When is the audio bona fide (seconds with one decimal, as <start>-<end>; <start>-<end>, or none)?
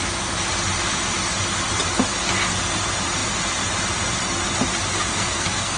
0.0-5.1